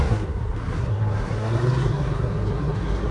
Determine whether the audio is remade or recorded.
remade